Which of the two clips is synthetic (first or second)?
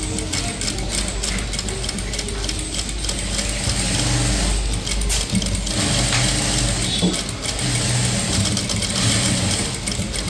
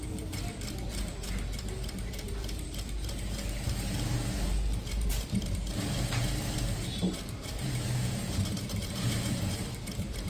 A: second